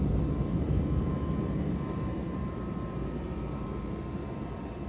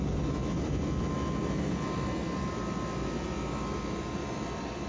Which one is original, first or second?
second